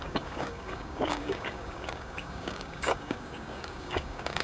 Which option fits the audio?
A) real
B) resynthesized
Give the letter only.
B